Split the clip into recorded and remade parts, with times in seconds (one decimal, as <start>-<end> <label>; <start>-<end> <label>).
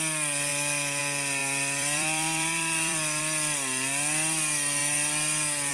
0.0-1.4 recorded; 1.4-3.2 remade; 3.2-5.7 recorded